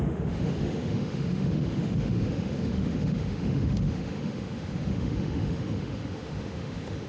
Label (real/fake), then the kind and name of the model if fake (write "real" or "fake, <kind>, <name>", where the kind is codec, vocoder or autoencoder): fake, autoencoder, DAC-VAE